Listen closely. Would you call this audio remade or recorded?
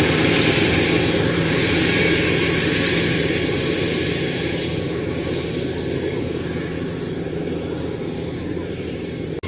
remade